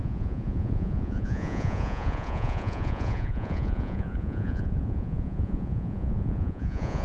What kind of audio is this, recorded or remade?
remade